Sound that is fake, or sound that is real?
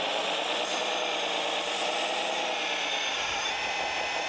real